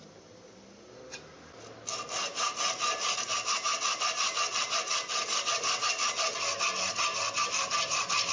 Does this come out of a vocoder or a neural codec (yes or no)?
no